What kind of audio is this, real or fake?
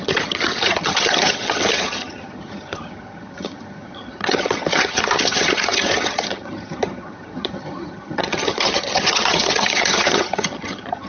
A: fake